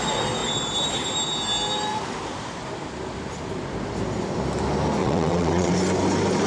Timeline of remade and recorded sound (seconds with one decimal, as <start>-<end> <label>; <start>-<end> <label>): 0.0-5.0 recorded; 5.0-5.7 remade; 5.7-6.5 recorded